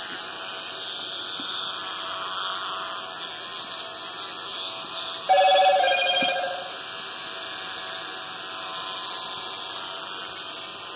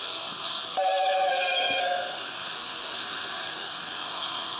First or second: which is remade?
second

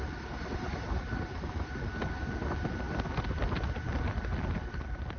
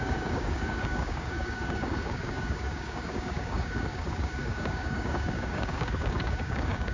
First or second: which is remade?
second